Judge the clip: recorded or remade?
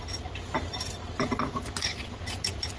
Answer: recorded